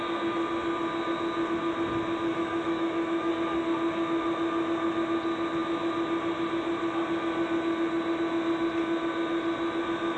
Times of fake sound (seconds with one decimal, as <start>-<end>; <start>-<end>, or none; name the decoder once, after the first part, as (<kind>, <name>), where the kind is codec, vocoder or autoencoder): 2.3-3.3 (autoencoder, DAC-VAE)